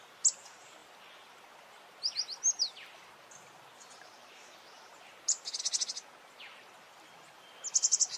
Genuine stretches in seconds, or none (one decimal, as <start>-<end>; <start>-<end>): 0.0-8.2